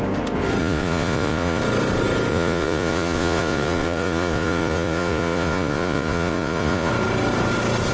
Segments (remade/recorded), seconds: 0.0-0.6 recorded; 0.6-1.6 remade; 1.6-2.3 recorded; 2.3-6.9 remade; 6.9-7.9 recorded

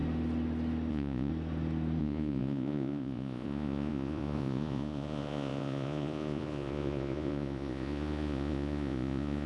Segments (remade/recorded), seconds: 0.0-0.9 recorded; 0.9-1.3 remade; 1.3-2.0 recorded; 2.0-9.5 remade

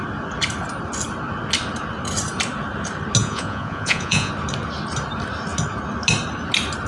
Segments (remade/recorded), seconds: 0.0-3.2 recorded; 3.2-4.3 remade; 4.3-6.9 recorded

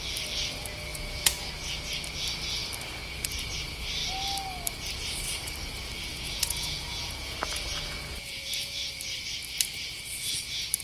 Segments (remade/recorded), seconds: 0.0-0.9 recorded; 0.9-1.5 remade; 1.5-6.1 recorded; 6.1-8.9 remade; 8.9-10.8 recorded